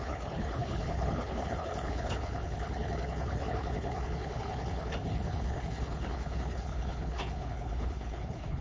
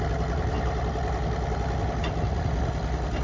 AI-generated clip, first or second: first